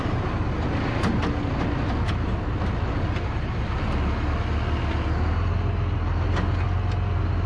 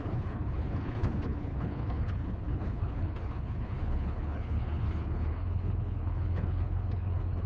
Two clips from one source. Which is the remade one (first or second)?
second